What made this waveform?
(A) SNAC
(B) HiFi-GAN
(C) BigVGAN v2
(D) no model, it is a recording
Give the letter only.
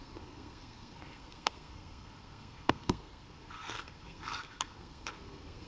A